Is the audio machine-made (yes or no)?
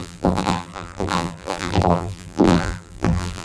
yes